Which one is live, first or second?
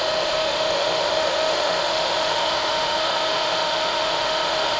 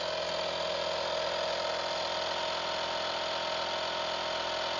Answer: second